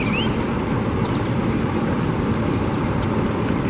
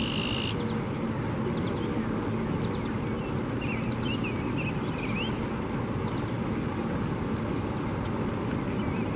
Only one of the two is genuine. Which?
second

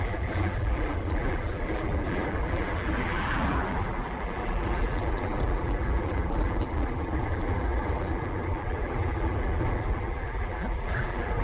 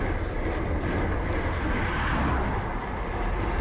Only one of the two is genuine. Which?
second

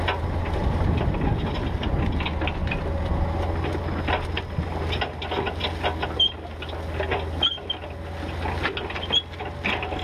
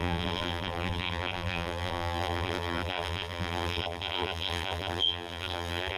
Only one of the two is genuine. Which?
first